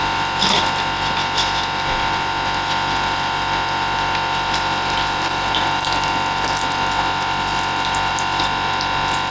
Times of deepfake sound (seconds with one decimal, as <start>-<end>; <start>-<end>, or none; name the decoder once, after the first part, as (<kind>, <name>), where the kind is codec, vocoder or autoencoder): none